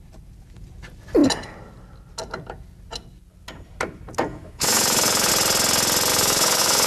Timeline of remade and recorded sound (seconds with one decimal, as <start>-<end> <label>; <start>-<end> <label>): 0.0-4.3 recorded; 4.3-5.3 remade; 5.3-6.1 recorded; 6.1-6.9 remade